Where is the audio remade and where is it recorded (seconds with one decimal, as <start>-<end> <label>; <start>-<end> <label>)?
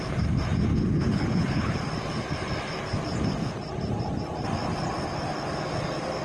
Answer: 0.0-0.7 recorded; 0.7-1.8 remade; 1.8-6.2 recorded